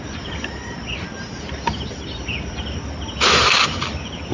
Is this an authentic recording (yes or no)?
yes